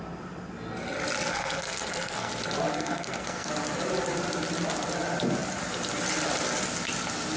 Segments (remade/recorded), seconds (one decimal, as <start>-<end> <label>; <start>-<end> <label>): 0.0-1.3 recorded; 1.3-2.3 remade; 2.3-2.7 recorded; 2.7-3.5 remade; 3.5-7.4 recorded